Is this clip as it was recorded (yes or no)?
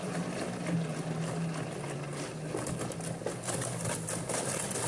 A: yes